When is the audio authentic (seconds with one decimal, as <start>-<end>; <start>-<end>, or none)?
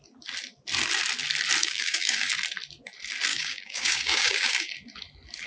0.0-1.6; 2.3-3.3; 4.7-5.5